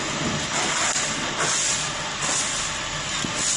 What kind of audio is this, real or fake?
real